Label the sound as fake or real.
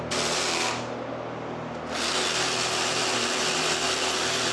real